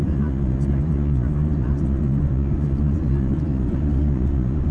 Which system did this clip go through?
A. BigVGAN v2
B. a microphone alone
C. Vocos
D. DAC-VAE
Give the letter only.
C